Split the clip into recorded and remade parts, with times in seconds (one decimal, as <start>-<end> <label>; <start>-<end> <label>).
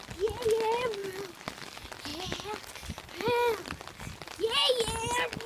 0.0-5.5 recorded